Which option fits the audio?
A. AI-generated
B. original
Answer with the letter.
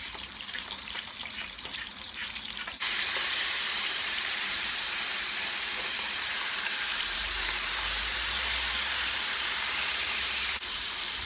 A